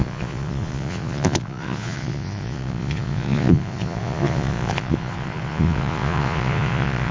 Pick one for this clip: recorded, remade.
remade